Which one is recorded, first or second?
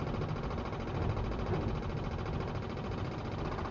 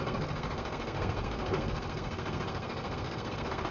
first